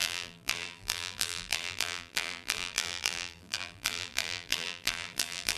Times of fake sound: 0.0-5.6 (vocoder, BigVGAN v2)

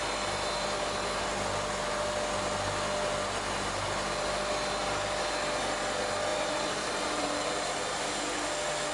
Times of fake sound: 6.3-8.0 (vocoder, BigVGAN v2)

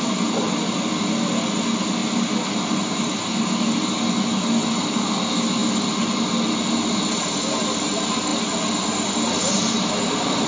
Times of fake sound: none

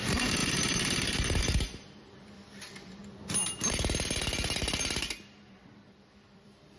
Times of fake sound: 0.0-3.0 (vocoder, BigVGAN v2); 5.4-6.8

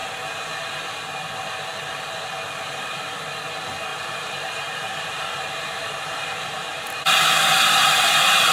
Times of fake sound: 3.9-7.1 (vocoder, BigVGAN v2)

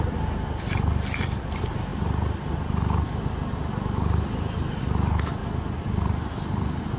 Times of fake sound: 0.0-1.9 (vocoder, BigVGAN v2); 4.8-5.4

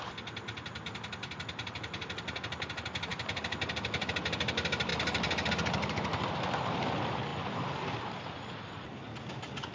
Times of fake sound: 3.1-4.1 (vocoder, BigVGAN v2); 4.9-5.5; 7.3-8.7

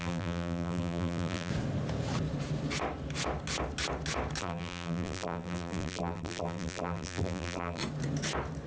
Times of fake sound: 0.0-1.5 (vocoder, BigVGAN v2); 4.4-7.8